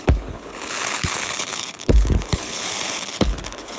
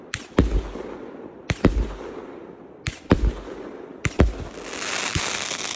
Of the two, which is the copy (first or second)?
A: first